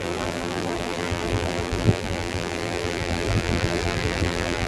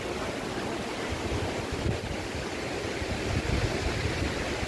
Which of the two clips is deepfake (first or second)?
first